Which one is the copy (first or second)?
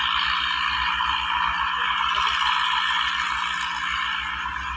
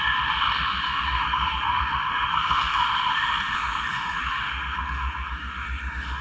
second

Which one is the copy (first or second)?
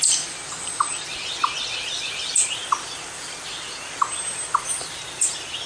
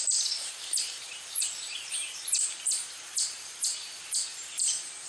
second